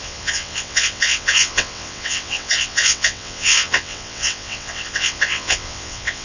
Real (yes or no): no